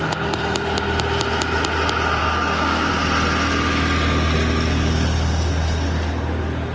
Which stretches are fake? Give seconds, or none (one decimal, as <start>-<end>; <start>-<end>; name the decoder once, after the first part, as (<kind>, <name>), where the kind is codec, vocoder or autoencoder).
2.2-2.9 (codec, DAC)